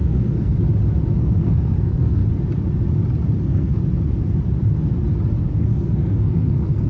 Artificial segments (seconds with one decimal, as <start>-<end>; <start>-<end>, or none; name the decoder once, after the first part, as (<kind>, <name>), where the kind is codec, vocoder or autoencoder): 0.0-0.6 (codec, SNAC); 1.2-2.2; 3.4-3.8; 5.4-6.9